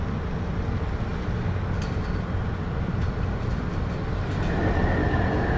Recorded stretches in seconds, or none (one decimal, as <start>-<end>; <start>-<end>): 0.0-5.6